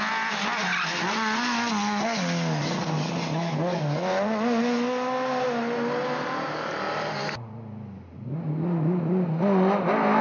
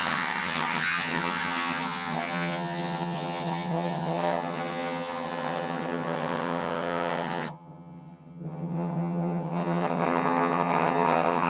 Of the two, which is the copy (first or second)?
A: second